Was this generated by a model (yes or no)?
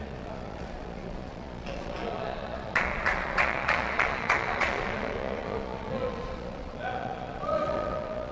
yes